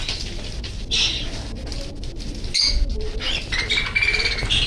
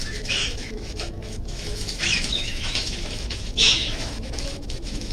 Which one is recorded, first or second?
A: first